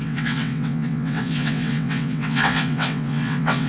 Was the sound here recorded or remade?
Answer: remade